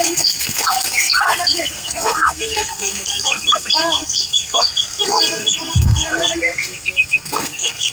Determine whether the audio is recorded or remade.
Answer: remade